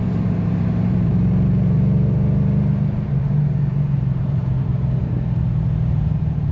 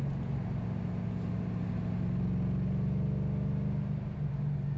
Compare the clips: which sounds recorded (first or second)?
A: second